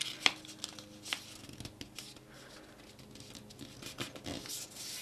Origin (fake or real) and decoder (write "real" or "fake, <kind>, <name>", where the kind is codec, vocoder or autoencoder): real